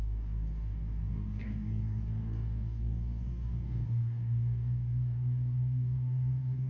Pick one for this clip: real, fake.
fake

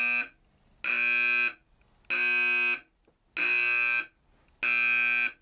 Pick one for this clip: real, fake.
real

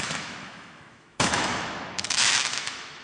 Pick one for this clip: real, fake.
fake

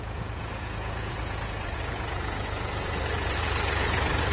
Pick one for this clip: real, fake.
fake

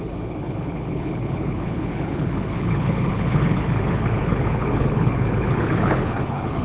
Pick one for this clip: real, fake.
fake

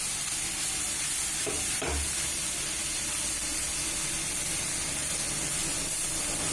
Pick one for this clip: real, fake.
real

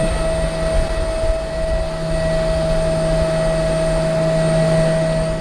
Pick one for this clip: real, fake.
real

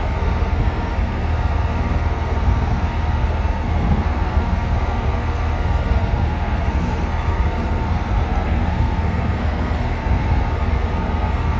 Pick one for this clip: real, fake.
fake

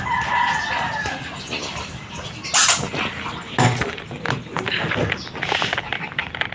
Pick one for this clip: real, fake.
real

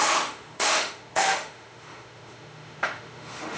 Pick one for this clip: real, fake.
fake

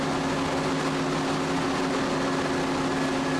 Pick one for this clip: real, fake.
real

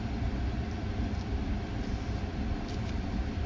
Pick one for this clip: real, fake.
fake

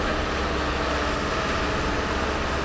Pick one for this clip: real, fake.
real